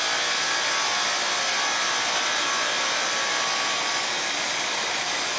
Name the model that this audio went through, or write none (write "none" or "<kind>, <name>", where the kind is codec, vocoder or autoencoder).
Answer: none